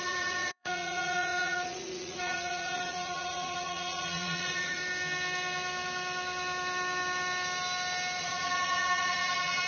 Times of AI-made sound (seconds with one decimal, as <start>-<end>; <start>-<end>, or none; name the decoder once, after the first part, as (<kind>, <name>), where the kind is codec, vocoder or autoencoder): 0.0-4.8 (vocoder, Vocos); 8.2-9.7